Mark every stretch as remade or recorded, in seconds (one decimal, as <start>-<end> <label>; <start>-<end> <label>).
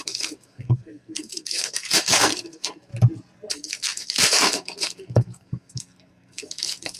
0.0-2.9 remade; 2.9-3.5 recorded; 3.5-7.0 remade